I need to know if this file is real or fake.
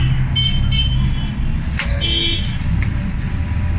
real